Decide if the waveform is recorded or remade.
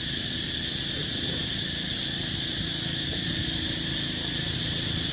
recorded